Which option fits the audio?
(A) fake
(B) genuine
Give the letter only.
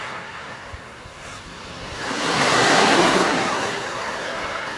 A